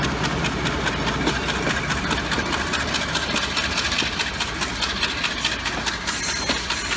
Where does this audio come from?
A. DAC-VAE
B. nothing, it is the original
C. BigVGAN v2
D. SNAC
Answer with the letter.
B